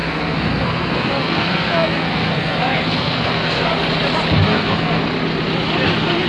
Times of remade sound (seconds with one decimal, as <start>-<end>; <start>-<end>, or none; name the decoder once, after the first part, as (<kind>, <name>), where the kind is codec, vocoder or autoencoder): 0.0-3.7 (codec, SNAC); 4.5-5.0